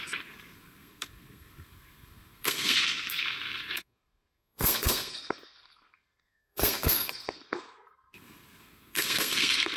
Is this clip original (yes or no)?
no